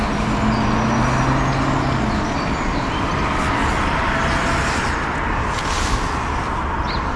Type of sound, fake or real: real